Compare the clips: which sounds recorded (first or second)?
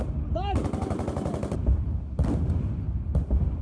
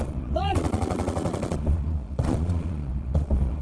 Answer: first